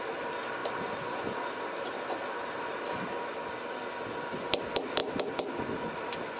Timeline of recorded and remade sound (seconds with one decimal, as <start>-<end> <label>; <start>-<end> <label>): 0.0-6.4 recorded